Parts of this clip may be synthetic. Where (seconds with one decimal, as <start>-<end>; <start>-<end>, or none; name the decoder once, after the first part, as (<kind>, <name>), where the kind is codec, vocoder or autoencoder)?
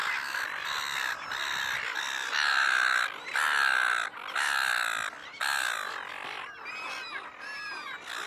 none